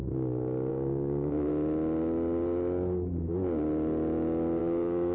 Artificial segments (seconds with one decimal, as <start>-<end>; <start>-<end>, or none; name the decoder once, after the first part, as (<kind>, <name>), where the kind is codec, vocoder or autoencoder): 0.7-1.5 (codec, DAC); 4.6-5.1